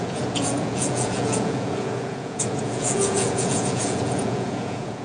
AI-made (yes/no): yes